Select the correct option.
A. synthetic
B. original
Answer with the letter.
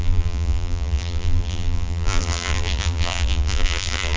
A